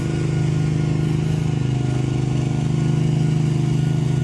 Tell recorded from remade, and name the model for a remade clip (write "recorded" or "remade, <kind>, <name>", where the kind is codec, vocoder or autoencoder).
recorded